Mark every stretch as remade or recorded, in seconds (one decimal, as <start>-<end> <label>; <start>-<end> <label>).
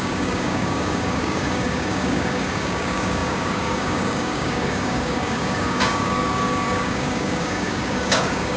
0.0-8.6 remade